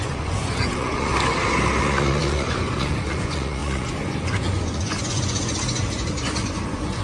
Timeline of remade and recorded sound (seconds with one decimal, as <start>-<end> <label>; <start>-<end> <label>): 0.0-1.1 remade; 1.1-1.8 recorded; 1.8-7.0 remade